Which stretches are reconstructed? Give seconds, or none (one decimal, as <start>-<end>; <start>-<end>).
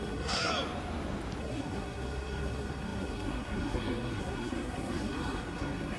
0.0-0.5; 1.4-6.0